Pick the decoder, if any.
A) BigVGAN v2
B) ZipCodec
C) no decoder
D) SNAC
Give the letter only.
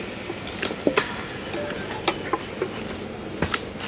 C